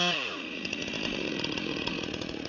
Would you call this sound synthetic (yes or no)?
yes